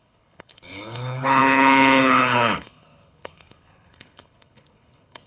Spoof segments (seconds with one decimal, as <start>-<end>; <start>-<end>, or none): 0.0-5.3